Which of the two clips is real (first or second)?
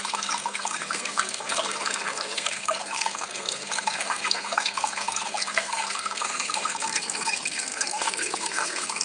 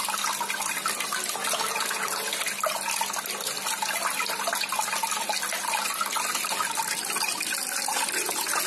second